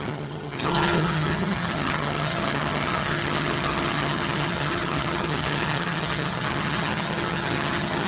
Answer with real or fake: fake